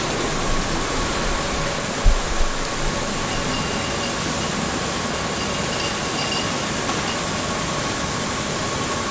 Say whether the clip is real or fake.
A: real